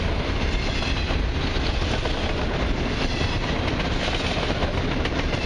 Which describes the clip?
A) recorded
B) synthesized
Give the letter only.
A